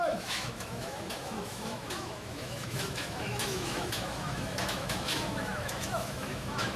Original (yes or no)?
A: no